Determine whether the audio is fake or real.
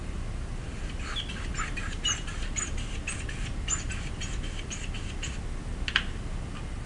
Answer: real